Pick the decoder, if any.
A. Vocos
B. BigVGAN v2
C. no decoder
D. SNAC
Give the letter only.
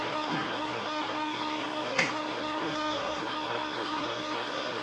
D